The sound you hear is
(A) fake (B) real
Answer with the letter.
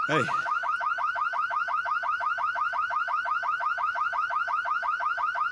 A